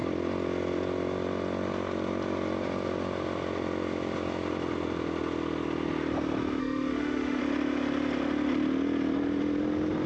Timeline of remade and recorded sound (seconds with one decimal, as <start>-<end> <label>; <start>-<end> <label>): 0.0-6.6 recorded; 6.6-7.4 remade; 7.4-10.1 recorded